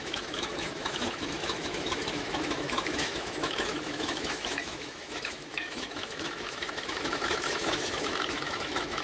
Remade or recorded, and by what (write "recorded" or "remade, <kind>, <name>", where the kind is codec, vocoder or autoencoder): remade, autoencoder, DAC-VAE